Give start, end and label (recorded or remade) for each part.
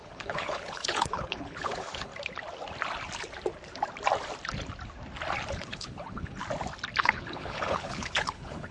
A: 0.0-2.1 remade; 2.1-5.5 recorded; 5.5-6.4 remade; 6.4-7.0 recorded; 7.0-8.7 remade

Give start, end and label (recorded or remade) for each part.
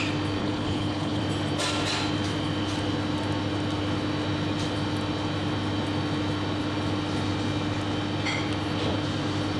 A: 0.0-0.4 recorded; 0.4-1.2 remade; 1.2-9.6 recorded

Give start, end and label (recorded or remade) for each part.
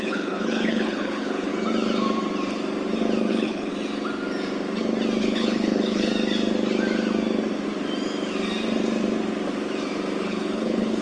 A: 0.0-1.5 remade; 1.5-3.3 recorded; 3.3-3.7 remade; 3.7-5.2 recorded; 5.2-6.1 remade; 6.1-10.2 recorded; 10.2-11.0 remade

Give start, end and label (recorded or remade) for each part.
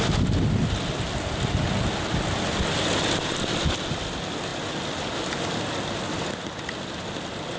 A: 0.0-7.6 recorded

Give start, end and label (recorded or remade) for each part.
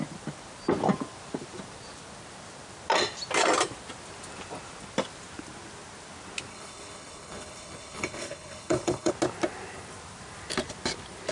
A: 0.0-6.5 recorded; 6.5-9.1 remade; 9.1-11.3 recorded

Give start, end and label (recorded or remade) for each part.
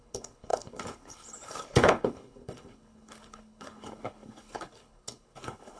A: 0.0-5.8 remade